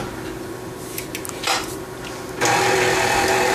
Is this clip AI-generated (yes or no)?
no